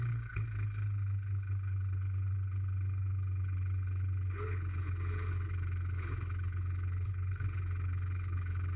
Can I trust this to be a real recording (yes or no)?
no